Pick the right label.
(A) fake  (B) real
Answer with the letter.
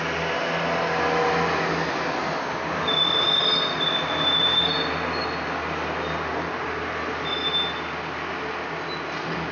B